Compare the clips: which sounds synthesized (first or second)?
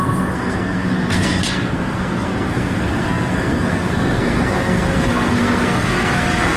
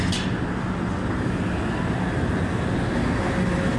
first